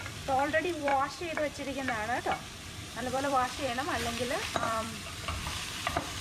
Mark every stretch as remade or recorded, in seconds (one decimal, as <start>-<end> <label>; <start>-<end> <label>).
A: 0.0-0.9 remade; 0.9-2.2 recorded; 2.2-6.2 remade